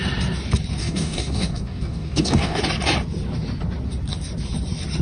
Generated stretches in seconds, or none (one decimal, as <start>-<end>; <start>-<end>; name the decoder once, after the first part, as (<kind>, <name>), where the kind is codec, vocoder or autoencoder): 0.8-2.6 (codec, DAC)